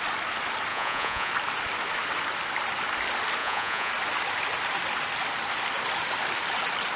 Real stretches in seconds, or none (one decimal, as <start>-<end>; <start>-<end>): 0.0-0.7; 1.3-3.4; 3.9-7.0